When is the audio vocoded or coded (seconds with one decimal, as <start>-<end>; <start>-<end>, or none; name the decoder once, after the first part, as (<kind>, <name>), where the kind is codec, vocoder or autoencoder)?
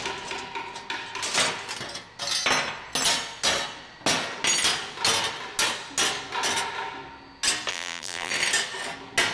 7.7-8.3 (vocoder, BigVGAN v2)